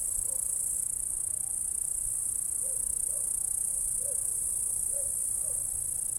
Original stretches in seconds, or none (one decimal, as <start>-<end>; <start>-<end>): 3.7-6.2